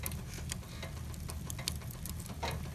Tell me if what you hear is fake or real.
real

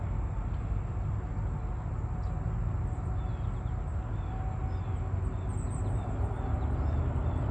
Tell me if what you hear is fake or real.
real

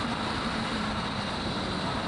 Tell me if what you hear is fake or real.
real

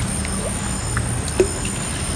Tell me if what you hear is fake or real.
real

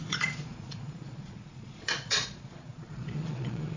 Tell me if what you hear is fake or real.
fake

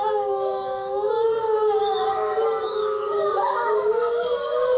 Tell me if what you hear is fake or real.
fake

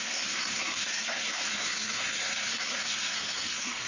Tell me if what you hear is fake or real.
fake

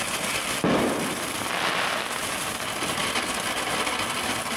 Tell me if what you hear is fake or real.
real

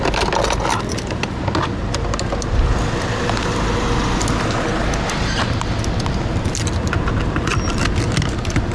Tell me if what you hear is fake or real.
real